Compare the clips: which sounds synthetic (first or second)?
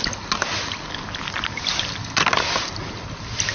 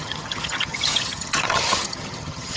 second